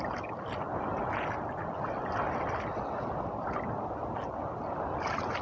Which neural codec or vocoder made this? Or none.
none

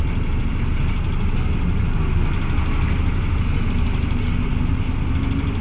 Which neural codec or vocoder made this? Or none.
none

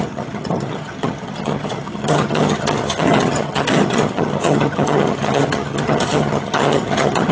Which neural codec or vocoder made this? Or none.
vocoder, HiFi-GAN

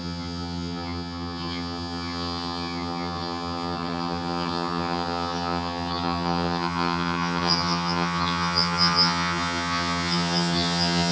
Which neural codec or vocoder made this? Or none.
vocoder, HiFi-GAN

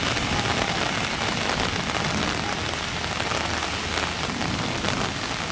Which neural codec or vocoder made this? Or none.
none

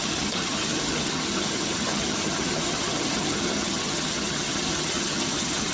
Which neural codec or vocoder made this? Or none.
vocoder, HiFi-GAN